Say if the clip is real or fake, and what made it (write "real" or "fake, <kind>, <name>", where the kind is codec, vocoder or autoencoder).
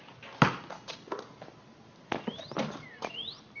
real